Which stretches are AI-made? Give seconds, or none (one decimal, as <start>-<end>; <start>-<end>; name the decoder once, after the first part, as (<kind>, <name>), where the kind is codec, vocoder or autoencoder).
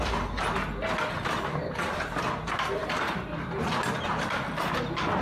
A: none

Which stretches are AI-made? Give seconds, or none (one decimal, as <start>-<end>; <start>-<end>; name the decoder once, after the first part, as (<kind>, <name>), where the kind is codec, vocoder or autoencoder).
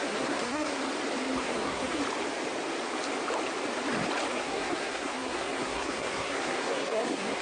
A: 0.0-0.8 (codec, SNAC); 1.4-2.0; 4.3-7.4